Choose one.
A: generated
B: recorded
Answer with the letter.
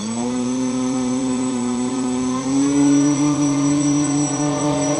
A